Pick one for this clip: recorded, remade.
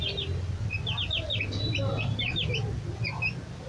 recorded